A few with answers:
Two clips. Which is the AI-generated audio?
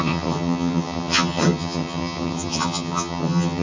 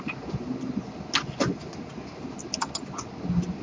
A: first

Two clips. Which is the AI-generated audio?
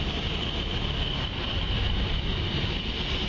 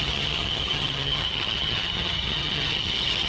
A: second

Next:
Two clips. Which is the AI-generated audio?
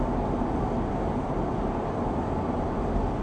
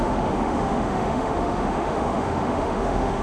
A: second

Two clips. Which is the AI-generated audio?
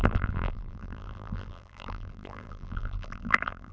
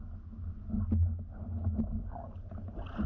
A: first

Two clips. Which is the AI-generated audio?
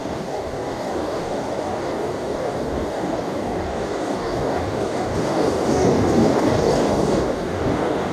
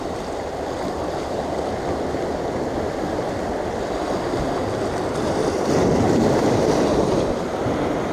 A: first